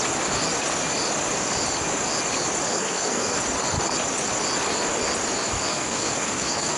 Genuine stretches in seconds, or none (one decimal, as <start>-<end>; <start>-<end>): 0.0-2.7; 3.4-5.7